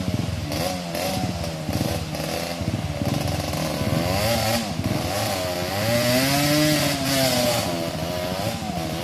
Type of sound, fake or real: real